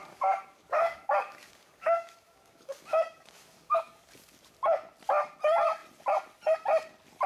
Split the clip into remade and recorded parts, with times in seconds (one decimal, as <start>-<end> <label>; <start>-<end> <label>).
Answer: 0.0-4.4 remade; 4.4-7.3 recorded